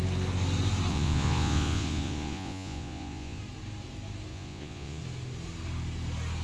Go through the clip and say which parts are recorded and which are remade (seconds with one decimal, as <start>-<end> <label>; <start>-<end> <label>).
0.0-0.9 recorded; 0.9-3.4 remade; 3.4-4.3 recorded; 4.3-5.0 remade; 5.0-6.4 recorded